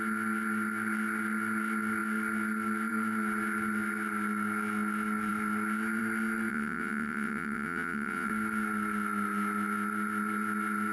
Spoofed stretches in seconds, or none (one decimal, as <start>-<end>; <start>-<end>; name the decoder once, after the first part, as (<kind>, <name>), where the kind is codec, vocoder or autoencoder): 6.5-8.3 (vocoder, WaveNeXt)